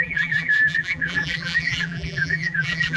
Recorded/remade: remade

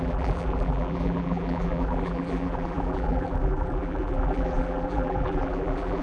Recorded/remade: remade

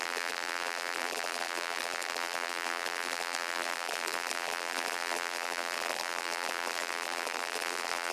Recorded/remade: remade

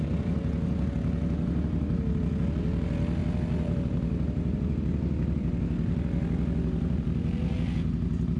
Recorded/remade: recorded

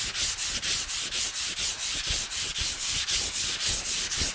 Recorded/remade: recorded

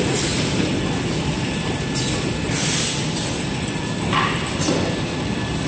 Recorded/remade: recorded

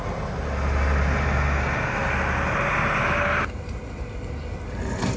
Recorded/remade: recorded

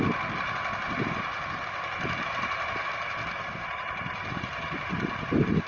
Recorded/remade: recorded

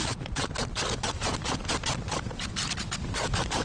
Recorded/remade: remade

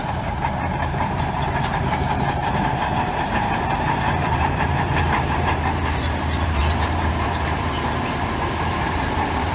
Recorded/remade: remade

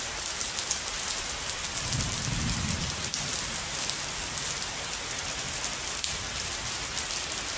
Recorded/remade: recorded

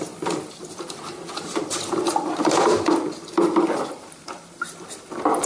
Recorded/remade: remade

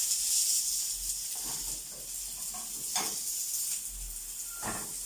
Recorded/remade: recorded